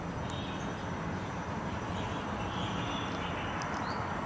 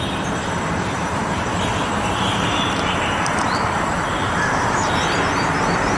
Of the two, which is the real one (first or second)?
first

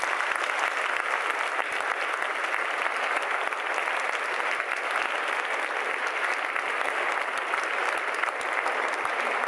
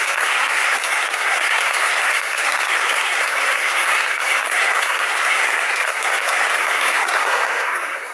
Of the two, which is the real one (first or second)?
first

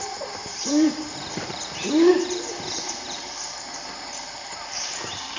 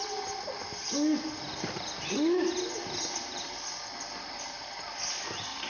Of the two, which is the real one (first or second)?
second